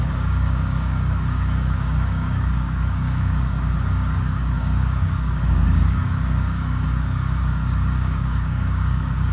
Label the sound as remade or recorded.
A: remade